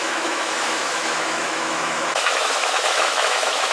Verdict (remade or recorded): remade